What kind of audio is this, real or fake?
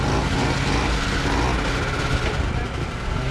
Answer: real